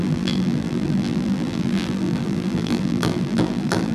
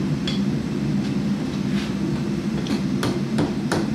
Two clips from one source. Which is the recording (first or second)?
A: second